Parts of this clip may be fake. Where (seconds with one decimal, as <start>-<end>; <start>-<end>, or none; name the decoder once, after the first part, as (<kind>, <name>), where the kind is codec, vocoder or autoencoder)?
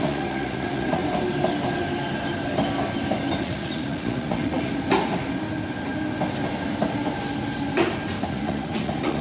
0.0-1.0 (vocoder, Vocos); 3.4-4.7; 8.3-9.2